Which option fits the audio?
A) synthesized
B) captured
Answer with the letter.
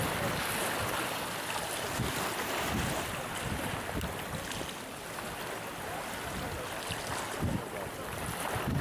B